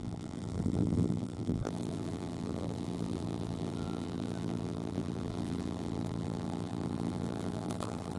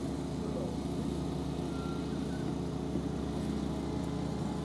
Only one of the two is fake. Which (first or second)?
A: first